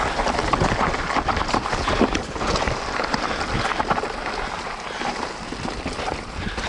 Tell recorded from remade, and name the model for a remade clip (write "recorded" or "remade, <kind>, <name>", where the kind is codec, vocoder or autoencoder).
recorded